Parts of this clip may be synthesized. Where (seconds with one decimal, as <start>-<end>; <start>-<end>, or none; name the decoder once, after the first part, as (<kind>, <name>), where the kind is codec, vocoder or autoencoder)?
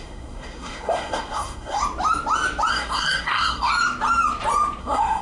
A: 0.0-1.8 (codec, SNAC); 2.7-3.7; 4.8-5.2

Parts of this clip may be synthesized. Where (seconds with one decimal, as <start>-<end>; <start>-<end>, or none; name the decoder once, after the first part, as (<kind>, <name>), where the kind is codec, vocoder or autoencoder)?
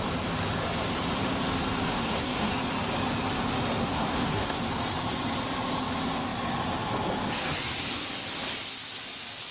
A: 1.9-2.5 (codec, SNAC); 3.8-4.6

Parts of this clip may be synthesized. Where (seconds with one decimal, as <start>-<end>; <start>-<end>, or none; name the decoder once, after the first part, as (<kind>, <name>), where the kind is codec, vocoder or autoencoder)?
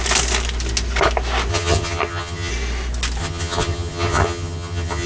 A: 1.5-2.5 (vocoder, HiFi-GAN); 3.2-5.1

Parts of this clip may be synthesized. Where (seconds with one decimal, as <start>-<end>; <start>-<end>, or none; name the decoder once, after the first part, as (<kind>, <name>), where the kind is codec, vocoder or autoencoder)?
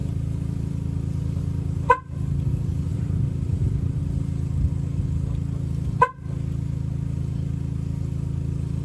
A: 0.0-0.7 (vocoder, BigVGAN v2); 2.9-4.0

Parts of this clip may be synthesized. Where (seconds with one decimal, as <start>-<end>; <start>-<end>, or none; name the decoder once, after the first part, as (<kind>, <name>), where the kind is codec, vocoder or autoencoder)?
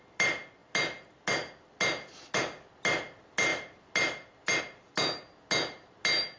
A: none